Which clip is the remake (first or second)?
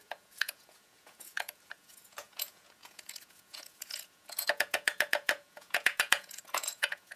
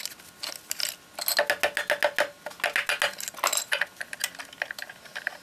first